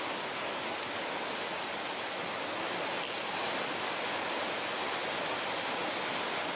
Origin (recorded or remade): recorded